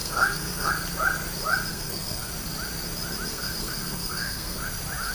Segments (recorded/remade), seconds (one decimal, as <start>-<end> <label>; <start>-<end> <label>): 0.0-0.7 remade; 0.7-1.7 recorded; 1.7-2.3 remade; 2.3-3.3 recorded; 3.3-4.6 remade; 4.6-5.1 recorded